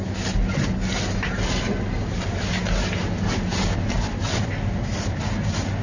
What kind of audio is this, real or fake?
real